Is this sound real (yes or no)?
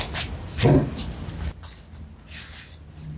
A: yes